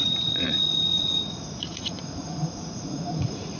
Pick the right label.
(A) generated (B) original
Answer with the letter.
A